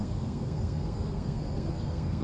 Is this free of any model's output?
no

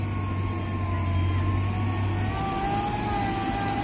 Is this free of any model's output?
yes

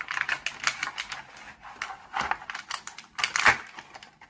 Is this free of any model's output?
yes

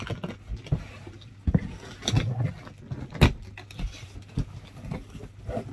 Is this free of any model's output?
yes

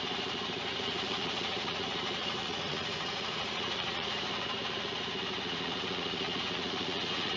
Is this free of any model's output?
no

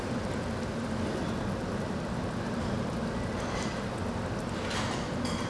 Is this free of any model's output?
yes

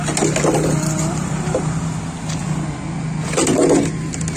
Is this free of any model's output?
yes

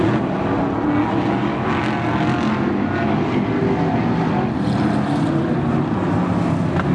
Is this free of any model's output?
yes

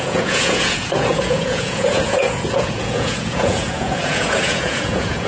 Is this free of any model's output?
no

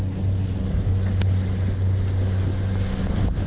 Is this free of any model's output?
yes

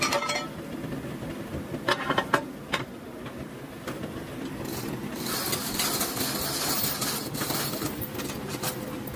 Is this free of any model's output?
yes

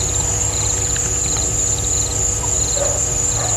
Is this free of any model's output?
yes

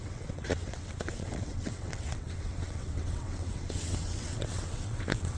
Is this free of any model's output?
no